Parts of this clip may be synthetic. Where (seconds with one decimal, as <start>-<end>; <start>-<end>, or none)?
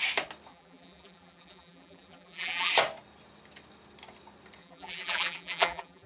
0.5-2.7; 4.6-6.1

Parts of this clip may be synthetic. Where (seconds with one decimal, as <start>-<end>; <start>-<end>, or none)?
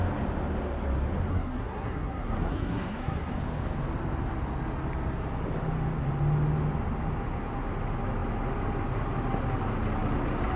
1.3-3.3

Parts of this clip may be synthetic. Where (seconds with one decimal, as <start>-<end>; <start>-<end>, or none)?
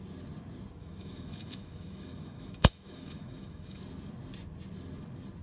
0.8-3.8